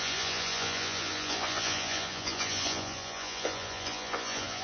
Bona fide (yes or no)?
no